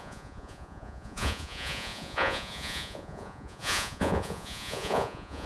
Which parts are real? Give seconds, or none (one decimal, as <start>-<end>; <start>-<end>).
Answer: none